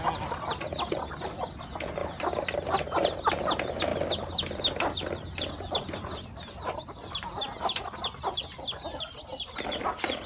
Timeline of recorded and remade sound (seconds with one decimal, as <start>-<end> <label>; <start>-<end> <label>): 0.0-10.3 recorded